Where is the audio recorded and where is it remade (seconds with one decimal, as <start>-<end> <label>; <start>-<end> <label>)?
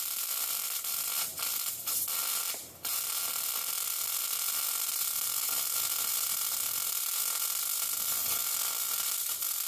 0.0-9.7 recorded